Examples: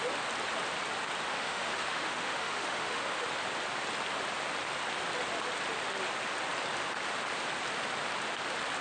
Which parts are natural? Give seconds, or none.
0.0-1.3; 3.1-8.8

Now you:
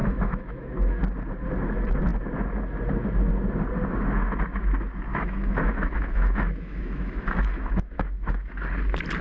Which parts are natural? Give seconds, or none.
1.0-5.1; 8.5-9.2